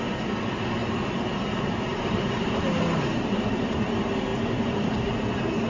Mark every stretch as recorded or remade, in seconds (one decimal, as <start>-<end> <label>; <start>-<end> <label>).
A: 0.0-1.9 recorded; 1.9-3.6 remade; 3.6-5.7 recorded